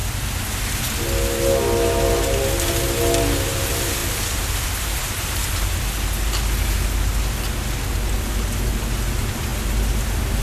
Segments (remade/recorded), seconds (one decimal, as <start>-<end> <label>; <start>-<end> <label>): 0.0-4.0 recorded; 4.0-5.2 remade; 5.2-10.4 recorded